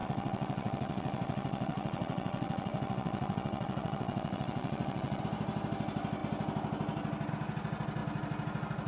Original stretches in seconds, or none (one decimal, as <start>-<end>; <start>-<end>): 5.2-8.9